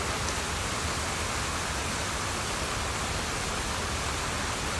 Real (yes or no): yes